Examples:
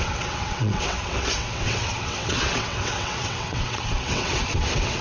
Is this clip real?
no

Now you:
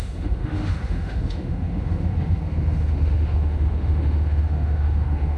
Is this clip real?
no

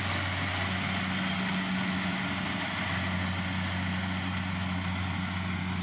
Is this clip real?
yes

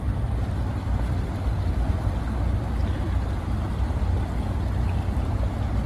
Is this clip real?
yes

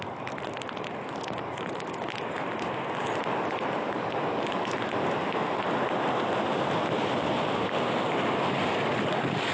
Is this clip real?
yes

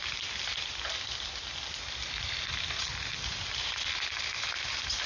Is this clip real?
yes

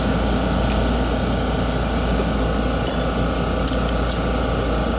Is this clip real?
yes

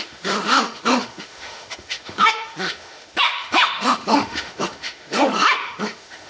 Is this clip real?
no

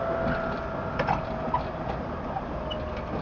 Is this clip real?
yes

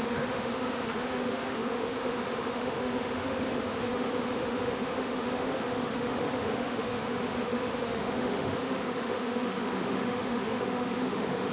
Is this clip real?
no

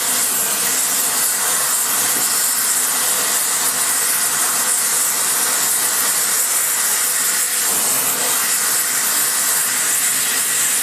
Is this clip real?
yes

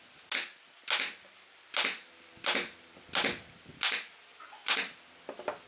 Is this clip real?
yes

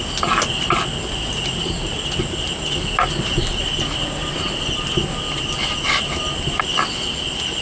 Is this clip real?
yes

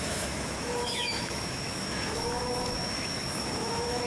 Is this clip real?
no